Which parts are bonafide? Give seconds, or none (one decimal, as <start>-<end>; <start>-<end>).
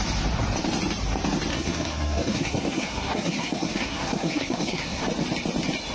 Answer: 0.0-1.5; 5.0-5.9